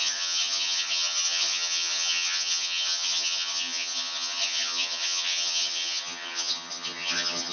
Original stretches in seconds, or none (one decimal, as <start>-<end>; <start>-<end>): none